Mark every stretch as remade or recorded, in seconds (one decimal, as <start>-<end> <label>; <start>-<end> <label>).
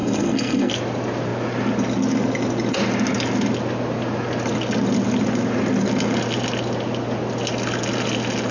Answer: 0.0-0.7 remade; 0.7-8.5 recorded